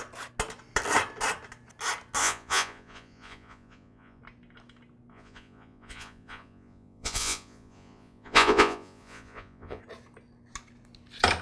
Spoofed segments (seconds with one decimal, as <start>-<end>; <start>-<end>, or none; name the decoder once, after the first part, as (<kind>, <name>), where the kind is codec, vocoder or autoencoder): 2.2-4.2 (vocoder, Vocos); 5.1-9.8